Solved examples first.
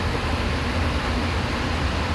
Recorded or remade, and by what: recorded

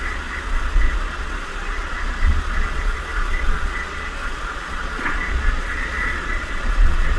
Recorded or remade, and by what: remade, vocoder, Vocos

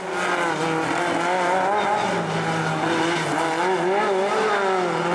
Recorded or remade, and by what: recorded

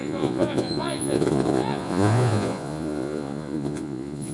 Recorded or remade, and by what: remade, vocoder, Vocos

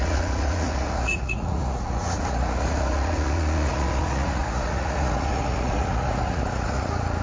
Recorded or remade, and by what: remade, vocoder, Vocos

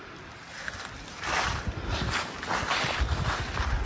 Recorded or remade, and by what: recorded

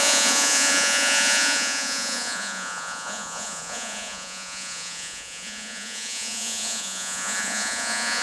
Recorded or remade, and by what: remade, vocoder, Vocos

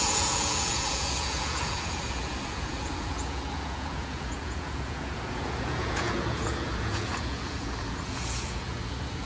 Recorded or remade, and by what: remade, vocoder, Vocos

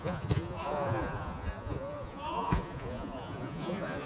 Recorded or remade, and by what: remade, vocoder, Vocos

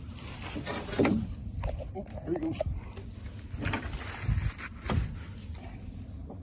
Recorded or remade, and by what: recorded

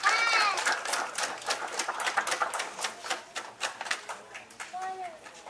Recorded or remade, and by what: recorded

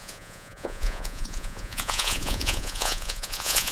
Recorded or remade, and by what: remade, vocoder, Vocos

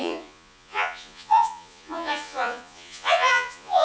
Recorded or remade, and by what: remade, vocoder, Vocos